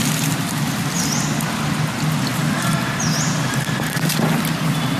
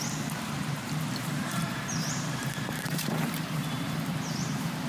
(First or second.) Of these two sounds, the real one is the first